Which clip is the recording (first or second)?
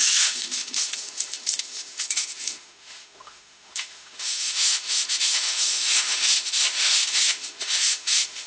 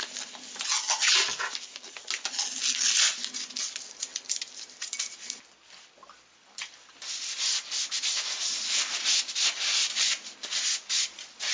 second